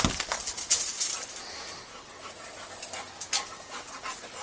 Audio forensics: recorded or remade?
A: recorded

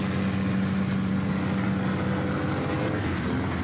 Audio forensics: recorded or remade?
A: recorded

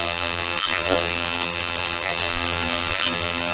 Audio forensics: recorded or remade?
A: remade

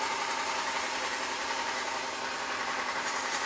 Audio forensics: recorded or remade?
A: remade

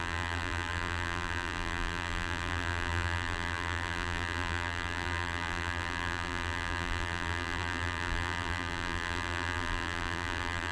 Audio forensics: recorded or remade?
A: remade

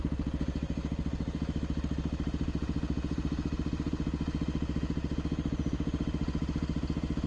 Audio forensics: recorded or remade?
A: recorded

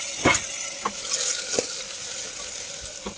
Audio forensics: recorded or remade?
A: recorded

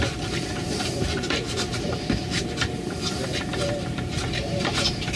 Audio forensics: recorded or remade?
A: remade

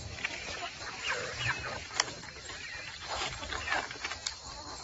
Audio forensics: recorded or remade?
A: recorded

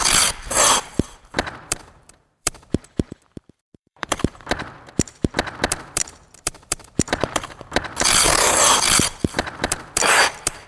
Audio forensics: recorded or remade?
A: remade